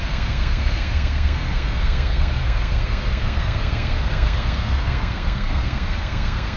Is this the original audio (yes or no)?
no